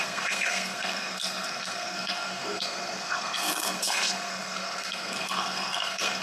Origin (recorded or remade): remade